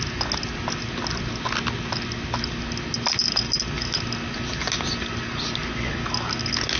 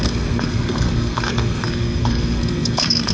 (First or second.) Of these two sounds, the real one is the first